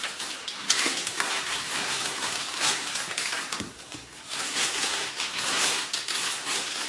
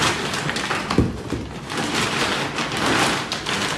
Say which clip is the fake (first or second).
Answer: first